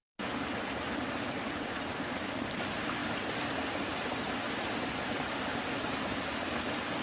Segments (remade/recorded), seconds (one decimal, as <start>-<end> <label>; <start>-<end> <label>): 0.0-7.0 recorded